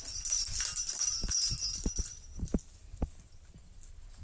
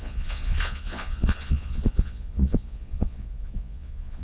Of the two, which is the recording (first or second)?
first